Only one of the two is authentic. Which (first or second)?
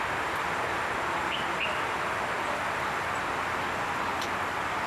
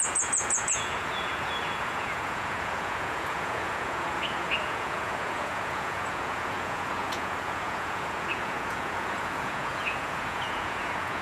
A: first